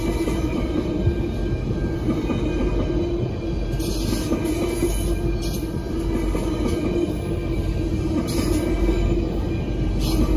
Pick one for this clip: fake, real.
real